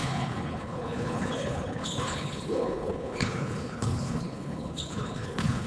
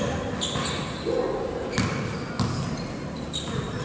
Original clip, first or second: second